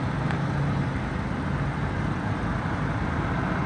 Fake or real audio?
real